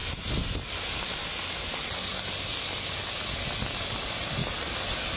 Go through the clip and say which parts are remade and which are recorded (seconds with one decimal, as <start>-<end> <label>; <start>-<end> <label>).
0.0-5.2 recorded